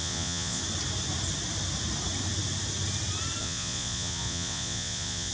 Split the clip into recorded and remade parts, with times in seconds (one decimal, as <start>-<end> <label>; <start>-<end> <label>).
0.0-0.6 remade; 0.6-3.4 recorded; 3.4-5.3 remade

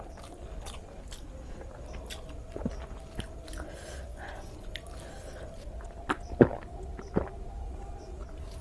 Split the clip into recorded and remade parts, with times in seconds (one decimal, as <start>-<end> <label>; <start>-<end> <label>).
0.0-4.1 recorded; 4.1-4.7 remade; 4.7-8.6 recorded